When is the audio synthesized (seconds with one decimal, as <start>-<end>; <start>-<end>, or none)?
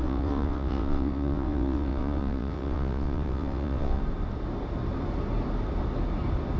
0.0-4.0